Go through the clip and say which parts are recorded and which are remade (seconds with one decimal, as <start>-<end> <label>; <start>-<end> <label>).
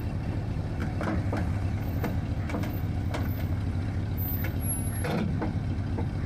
0.0-6.3 recorded